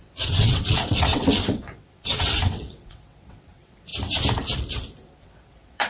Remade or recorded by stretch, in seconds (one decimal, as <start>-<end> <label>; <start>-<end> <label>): 0.0-3.9 remade; 3.9-5.2 recorded; 5.2-5.9 remade